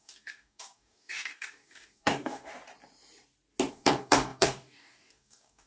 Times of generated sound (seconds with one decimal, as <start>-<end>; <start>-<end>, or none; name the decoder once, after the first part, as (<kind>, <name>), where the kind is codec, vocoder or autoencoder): 0.0-2.5 (codec, DAC); 3.7-5.7